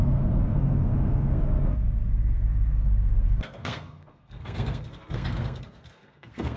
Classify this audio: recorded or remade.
remade